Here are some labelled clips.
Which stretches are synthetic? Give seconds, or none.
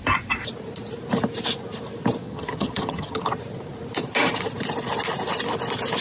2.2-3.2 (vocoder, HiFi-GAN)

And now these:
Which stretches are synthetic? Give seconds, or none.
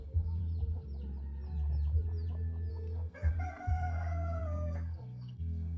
0.0-0.4 (codec, SNAC); 2.7-5.8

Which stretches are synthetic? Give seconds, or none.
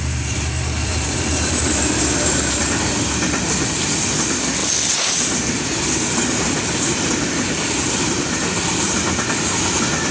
0.8-2.9 (vocoder, BigVGAN v2)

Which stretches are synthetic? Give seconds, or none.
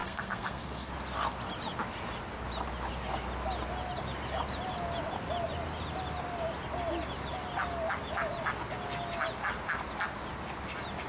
0.0-0.9 (codec, SNAC)